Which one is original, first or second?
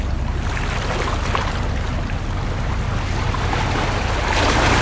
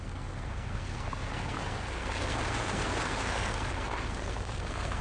first